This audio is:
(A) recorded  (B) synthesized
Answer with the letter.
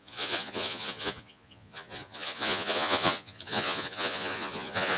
B